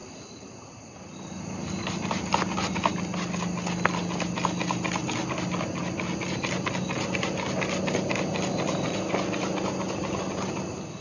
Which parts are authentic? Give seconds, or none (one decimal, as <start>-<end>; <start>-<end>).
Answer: 0.0-11.0